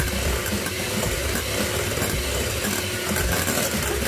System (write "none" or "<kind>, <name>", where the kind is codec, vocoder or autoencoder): vocoder, BigVGAN v2